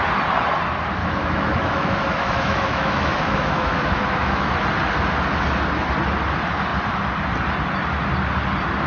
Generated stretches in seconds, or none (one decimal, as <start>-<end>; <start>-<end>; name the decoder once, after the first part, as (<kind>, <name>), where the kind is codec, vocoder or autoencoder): 1.0-4.5 (autoencoder, DAC-VAE)